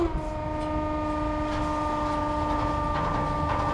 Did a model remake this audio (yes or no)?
no